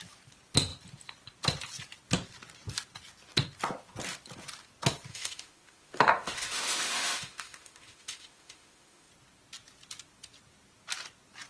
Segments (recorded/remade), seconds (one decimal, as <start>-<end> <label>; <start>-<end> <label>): 0.0-5.1 recorded; 5.1-9.1 remade; 9.1-11.5 recorded